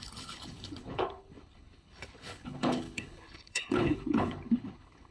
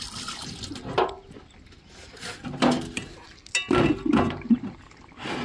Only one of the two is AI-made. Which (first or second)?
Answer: first